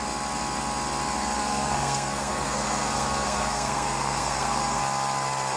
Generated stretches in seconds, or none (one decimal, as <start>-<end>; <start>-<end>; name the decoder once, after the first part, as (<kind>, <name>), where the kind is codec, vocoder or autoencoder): 1.4-4.8 (codec, SNAC)